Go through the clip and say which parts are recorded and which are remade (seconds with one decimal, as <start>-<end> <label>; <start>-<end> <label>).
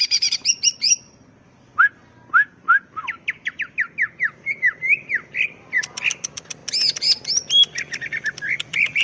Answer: 0.0-1.7 remade; 1.7-4.3 recorded; 4.3-6.6 remade; 6.6-8.5 recorded; 8.5-9.0 remade